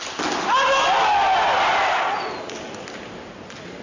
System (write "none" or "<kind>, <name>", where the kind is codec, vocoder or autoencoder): none